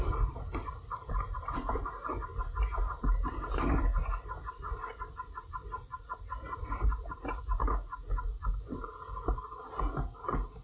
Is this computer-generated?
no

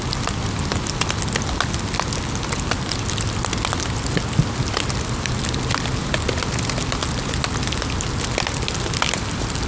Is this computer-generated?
no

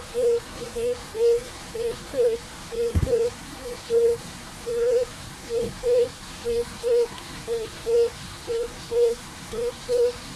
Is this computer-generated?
yes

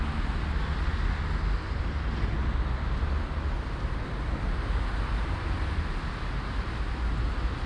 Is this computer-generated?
no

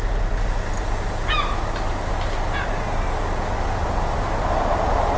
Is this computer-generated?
no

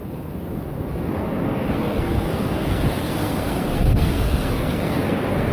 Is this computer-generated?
yes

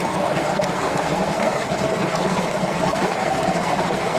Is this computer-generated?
yes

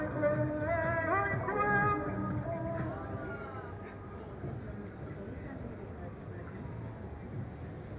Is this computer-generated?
no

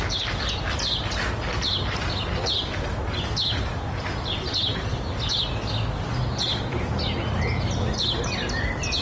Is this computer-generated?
no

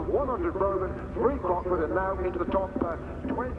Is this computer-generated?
no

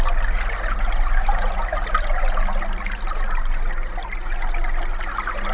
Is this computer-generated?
no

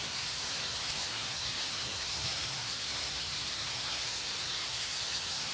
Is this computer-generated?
yes